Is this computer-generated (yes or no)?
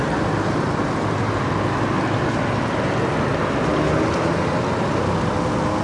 no